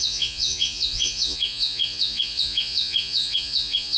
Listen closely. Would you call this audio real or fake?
fake